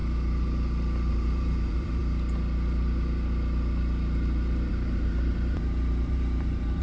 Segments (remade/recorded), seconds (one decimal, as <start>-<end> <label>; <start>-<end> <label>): 0.0-1.1 recorded; 1.1-2.0 remade; 2.0-4.7 recorded; 4.7-6.8 remade